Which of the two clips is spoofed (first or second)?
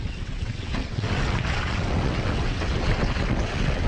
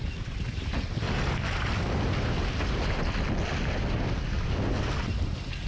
first